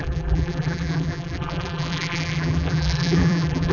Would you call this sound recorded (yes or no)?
no